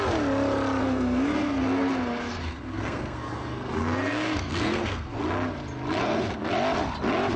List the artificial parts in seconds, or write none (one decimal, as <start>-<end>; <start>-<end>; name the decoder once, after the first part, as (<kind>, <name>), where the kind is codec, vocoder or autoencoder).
0.8-5.2 (codec, SNAC); 6.0-6.5